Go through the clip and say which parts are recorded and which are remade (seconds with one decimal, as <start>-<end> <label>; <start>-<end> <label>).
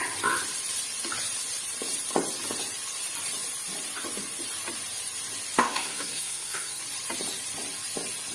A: 0.0-5.6 recorded; 5.6-6.8 remade; 6.8-8.3 recorded